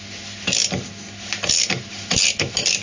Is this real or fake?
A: real